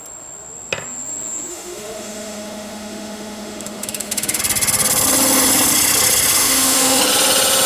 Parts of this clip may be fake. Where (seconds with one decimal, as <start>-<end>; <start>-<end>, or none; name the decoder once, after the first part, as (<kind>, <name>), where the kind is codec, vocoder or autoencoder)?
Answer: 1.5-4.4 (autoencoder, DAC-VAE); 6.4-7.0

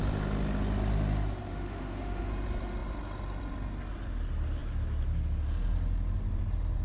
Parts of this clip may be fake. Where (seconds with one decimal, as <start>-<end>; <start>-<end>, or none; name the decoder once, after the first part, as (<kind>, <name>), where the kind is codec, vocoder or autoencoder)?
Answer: 1.5-2.3 (autoencoder, DAC-VAE)

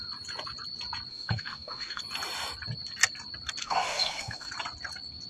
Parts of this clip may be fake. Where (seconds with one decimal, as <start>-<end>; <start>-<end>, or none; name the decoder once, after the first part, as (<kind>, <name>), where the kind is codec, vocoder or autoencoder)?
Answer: 1.1-2.0 (autoencoder, DAC-VAE); 3.6-4.5

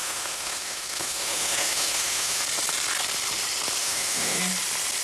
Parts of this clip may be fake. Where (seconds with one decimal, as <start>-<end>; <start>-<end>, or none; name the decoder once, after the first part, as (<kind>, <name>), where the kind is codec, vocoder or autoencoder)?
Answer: 0.0-2.4 (autoencoder, DAC-VAE); 3.8-4.4

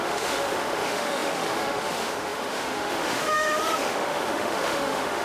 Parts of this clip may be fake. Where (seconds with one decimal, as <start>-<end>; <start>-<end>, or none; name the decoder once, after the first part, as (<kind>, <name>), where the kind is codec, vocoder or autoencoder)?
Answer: 0.0-5.2 (autoencoder, DAC-VAE)

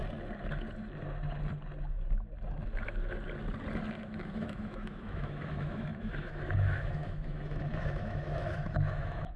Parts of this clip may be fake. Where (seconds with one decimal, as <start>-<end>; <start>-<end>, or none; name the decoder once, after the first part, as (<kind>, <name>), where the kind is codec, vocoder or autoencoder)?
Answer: 4.0-9.4 (autoencoder, DAC-VAE)